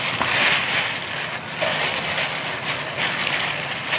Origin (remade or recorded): recorded